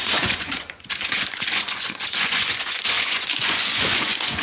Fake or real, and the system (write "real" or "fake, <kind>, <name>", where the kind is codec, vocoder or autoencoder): fake, vocoder, Vocos